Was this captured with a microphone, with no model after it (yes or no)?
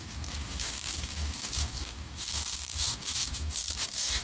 no